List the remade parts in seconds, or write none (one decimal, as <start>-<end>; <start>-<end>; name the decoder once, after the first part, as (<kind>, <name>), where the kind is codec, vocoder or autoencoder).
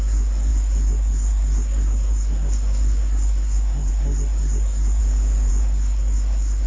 0.0-5.0 (codec, SNAC); 5.5-6.7